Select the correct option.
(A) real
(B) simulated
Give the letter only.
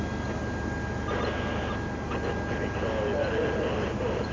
A